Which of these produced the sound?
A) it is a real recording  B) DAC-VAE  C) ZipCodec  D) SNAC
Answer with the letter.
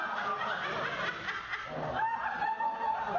A